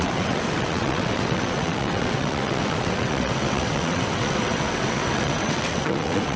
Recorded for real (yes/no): no